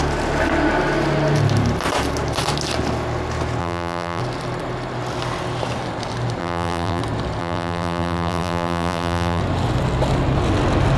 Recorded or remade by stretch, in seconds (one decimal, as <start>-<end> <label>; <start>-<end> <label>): 0.0-3.6 recorded; 3.6-4.2 remade; 4.2-6.4 recorded; 6.4-7.0 remade; 7.0-7.4 recorded; 7.4-9.4 remade; 9.4-11.0 recorded